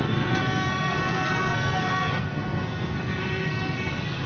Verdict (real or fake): fake